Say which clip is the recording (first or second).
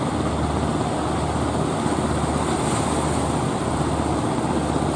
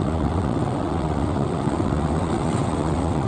first